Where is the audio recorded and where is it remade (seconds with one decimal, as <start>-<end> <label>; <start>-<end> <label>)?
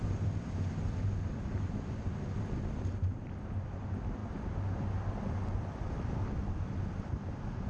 0.0-7.7 remade